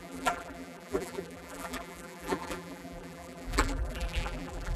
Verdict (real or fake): fake